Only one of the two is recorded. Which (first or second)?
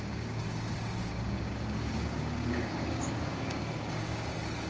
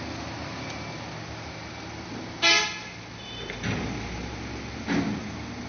second